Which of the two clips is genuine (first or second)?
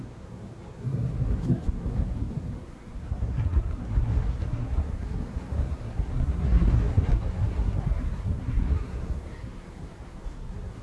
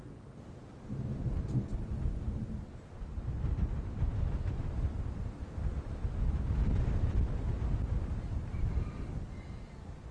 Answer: second